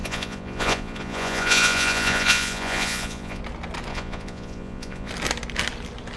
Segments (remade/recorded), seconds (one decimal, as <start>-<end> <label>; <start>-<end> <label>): 0.0-3.4 remade; 3.4-3.9 recorded; 3.9-5.1 remade; 5.1-6.2 recorded